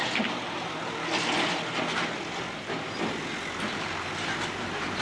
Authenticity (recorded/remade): recorded